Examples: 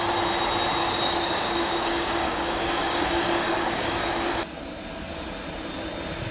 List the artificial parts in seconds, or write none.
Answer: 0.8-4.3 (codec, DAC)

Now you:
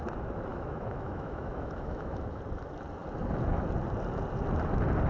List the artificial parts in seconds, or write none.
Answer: 0.5-2.4 (autoencoder, DAC-VAE)

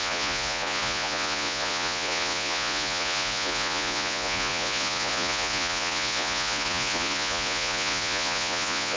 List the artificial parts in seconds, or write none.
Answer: 0.0-9.0 (vocoder, Vocos)

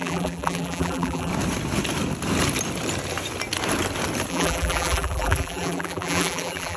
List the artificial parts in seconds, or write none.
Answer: 0.0-1.3 (vocoder, BigVGAN v2); 4.3-6.8

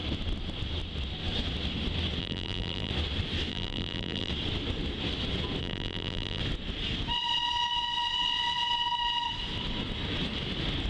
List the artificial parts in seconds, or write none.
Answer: 2.2-2.9 (vocoder, BigVGAN v2); 3.5-4.3; 5.6-6.4

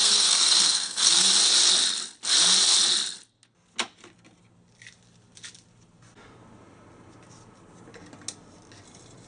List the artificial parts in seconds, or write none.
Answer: 0.0-1.3 (codec, SNAC)

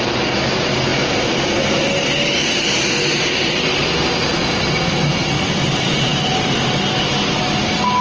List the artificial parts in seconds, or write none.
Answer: none

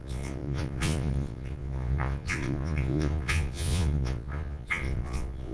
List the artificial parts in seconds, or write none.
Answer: 0.0-5.5 (vocoder, Vocos)